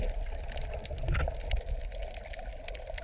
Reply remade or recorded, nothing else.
recorded